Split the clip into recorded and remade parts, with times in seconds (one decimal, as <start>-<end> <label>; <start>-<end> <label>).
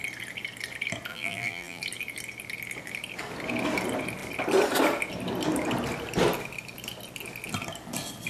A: 0.0-1.1 recorded; 1.1-1.8 remade; 1.8-8.3 recorded